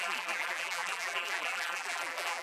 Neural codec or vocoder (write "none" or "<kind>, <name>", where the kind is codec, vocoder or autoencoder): vocoder, BigVGAN v2